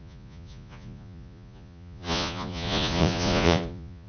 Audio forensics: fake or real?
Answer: fake